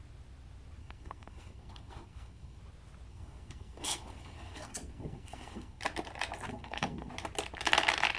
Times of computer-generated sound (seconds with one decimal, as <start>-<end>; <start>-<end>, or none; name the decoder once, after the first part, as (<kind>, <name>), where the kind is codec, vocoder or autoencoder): 0.8-2.6 (codec, SNAC); 3.1-5.8; 6.5-7.1